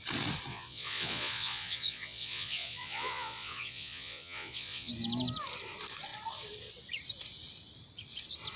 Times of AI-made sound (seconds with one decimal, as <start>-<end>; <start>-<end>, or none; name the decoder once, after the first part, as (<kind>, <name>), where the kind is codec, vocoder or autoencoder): 0.5-4.9 (vocoder, Vocos)